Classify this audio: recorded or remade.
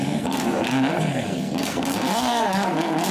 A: remade